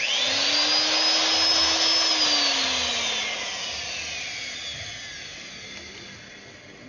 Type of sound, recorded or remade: recorded